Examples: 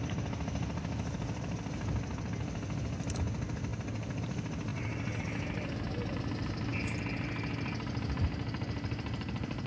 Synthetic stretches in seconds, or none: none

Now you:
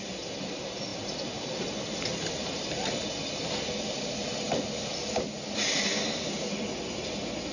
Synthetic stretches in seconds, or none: none